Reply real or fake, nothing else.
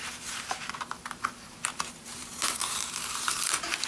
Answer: fake